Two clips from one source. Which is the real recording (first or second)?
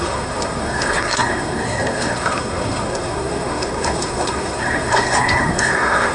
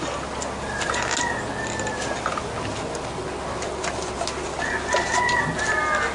second